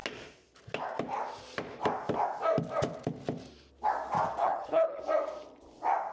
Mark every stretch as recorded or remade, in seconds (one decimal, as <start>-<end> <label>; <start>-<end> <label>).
0.0-4.4 recorded; 4.4-5.0 remade; 5.0-6.1 recorded